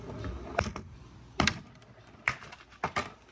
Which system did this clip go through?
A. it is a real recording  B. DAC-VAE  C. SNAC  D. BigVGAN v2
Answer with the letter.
A